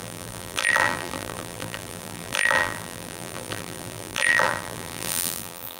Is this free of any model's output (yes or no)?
no